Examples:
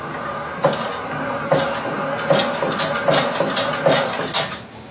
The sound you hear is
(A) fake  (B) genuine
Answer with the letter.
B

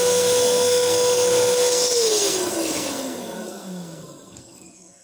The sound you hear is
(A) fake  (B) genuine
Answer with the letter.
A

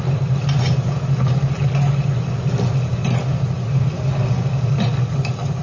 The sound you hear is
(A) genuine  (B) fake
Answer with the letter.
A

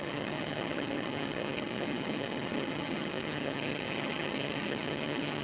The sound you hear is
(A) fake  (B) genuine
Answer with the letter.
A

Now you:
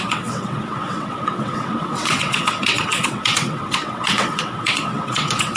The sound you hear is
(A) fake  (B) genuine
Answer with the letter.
A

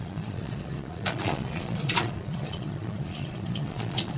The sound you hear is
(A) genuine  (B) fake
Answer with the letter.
B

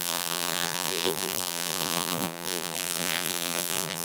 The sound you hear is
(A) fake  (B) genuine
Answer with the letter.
A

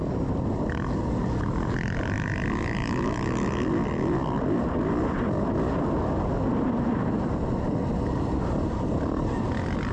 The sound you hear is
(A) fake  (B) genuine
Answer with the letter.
B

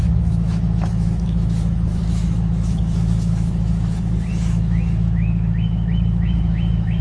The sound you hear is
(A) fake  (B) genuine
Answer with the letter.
A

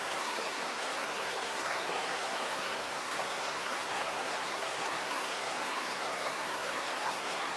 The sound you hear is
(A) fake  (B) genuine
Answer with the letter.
A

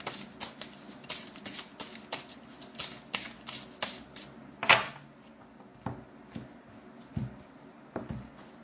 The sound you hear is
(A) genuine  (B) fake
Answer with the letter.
A